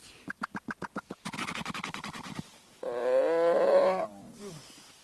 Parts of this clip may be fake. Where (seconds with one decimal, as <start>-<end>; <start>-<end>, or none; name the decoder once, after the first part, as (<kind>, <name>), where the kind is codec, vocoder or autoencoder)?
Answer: none